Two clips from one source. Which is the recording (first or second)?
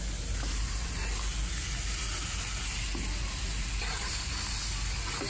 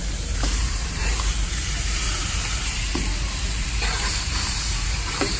first